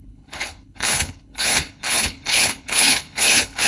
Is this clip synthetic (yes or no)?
yes